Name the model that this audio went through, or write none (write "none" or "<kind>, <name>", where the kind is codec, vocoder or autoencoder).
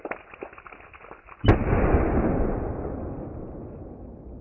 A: none